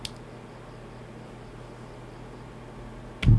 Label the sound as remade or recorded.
recorded